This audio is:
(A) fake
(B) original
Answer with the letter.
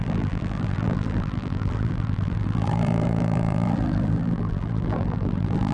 A